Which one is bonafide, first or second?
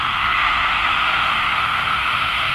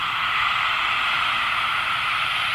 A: second